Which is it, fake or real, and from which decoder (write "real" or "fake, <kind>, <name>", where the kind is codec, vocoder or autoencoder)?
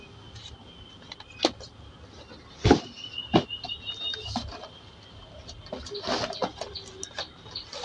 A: real